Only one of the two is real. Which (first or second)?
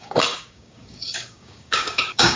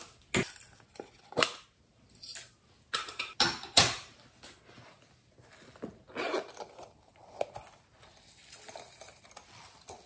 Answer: second